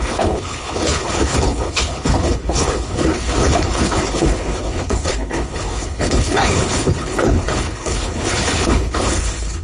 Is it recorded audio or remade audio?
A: remade